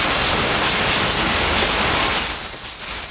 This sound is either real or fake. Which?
real